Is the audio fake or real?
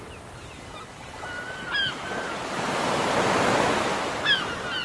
real